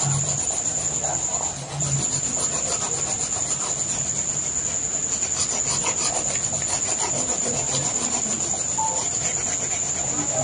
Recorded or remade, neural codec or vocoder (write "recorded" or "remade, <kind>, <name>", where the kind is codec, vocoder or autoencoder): recorded